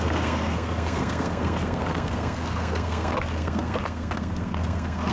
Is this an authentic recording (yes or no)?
no